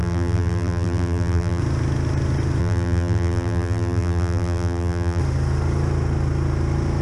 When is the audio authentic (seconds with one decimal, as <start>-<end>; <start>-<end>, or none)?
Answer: 1.6-2.6; 5.2-7.0